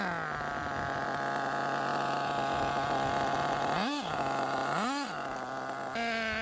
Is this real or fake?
real